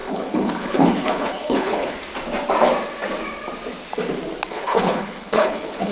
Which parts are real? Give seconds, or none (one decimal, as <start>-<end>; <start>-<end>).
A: 1.9-4.5